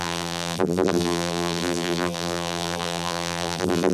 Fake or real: fake